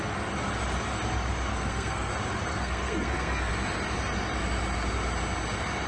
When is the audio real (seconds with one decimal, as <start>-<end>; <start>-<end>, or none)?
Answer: 0.0-1.5; 2.1-2.5; 3.5-5.9